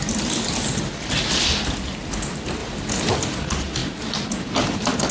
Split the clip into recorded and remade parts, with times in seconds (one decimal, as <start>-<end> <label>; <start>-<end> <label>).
0.0-5.1 recorded